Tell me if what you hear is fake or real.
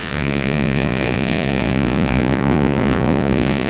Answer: fake